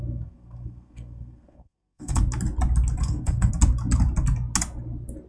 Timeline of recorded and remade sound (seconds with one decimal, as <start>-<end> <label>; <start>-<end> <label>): 0.0-2.2 remade; 2.2-3.0 recorded; 3.0-3.5 remade; 3.5-5.3 recorded